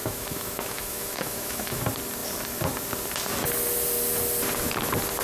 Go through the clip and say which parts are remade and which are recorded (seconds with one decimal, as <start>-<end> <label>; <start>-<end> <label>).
0.0-1.8 remade; 1.8-5.2 recorded